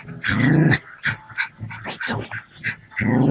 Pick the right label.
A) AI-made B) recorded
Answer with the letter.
B